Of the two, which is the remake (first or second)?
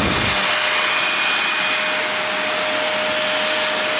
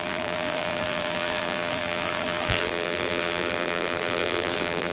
second